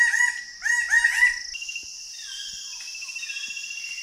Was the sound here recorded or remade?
recorded